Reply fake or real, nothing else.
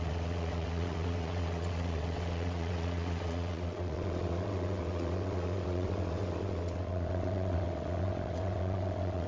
fake